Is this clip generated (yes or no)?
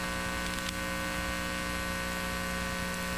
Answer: no